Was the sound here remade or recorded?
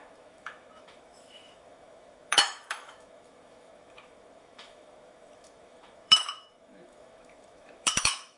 remade